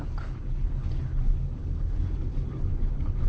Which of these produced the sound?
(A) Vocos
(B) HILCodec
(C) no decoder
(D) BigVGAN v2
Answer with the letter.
B